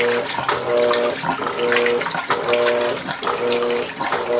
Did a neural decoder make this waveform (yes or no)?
no